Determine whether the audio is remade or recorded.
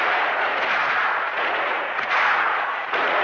remade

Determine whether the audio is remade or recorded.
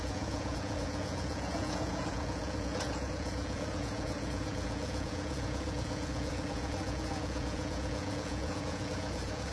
remade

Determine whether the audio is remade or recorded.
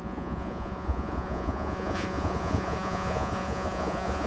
remade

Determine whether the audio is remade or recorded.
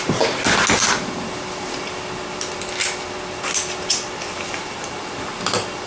recorded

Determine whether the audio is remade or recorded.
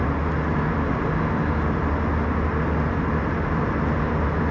recorded